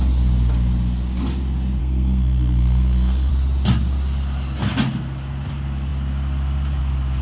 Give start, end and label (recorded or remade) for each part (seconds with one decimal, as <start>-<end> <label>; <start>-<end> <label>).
0.0-1.8 recorded; 1.8-3.3 remade; 3.3-7.2 recorded